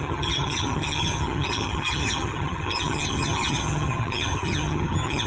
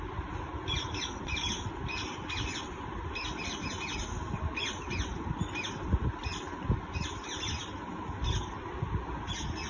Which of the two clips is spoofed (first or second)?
first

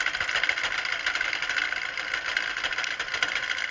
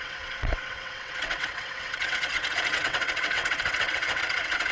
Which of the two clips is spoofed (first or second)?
second